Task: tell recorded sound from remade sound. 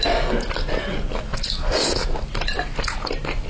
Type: recorded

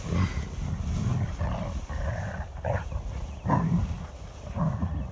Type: recorded